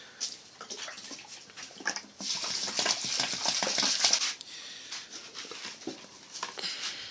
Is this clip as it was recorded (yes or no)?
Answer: yes